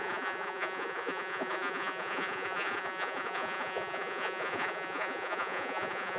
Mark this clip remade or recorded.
remade